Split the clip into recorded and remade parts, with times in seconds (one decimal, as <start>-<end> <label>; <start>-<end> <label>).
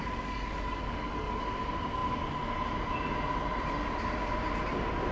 0.0-1.4 remade; 1.4-5.1 recorded